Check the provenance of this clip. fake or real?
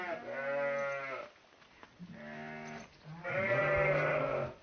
real